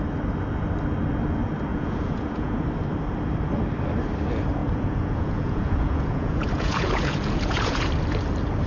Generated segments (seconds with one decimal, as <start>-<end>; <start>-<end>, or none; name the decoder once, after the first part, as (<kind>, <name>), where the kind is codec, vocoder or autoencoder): 1.7-2.7 (vocoder, Vocos); 4.6-7.9